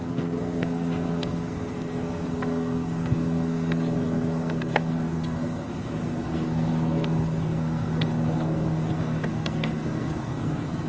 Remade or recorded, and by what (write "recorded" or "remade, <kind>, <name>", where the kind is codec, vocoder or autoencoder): remade, codec, SNAC